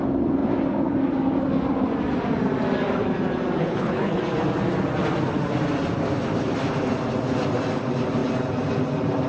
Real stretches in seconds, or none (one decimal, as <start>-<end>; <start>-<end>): 0.0-3.6; 4.2-9.3